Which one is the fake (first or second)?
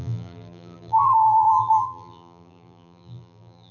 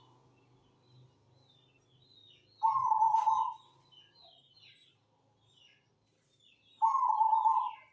first